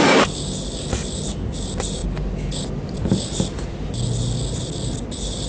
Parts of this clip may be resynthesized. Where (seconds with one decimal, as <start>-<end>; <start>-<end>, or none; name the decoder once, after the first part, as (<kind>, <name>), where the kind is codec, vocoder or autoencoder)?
none